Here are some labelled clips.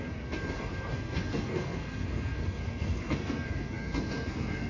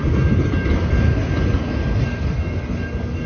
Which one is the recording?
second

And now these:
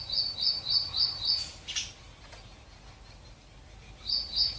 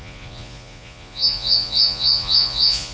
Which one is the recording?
first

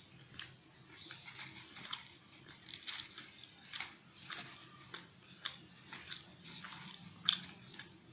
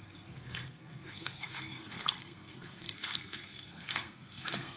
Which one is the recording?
first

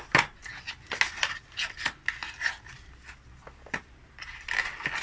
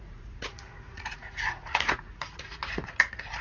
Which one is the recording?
first